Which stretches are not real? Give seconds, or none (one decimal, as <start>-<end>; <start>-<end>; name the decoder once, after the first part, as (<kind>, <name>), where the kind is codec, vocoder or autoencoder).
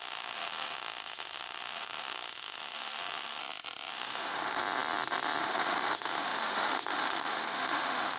0.0-3.4 (autoencoder, DAC-VAE); 3.9-4.6; 5.4-8.2